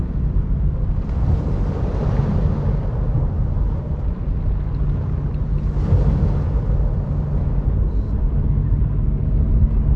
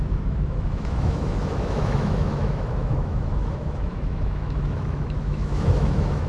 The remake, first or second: second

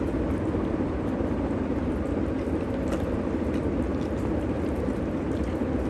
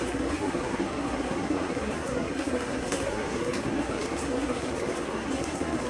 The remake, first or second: second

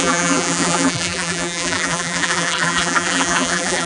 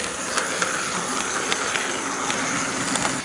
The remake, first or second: first